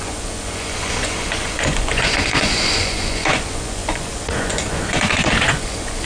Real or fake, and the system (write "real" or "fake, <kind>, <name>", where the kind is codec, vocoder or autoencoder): fake, vocoder, Vocos